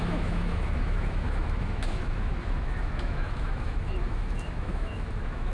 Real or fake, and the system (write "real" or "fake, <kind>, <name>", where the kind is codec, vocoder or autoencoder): fake, autoencoder, DAC-VAE